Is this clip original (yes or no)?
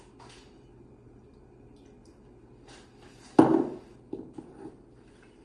yes